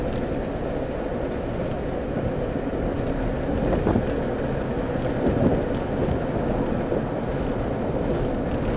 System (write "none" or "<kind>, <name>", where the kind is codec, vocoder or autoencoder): none